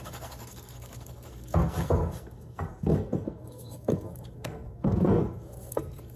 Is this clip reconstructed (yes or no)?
yes